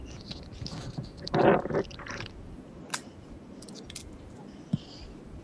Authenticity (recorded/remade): recorded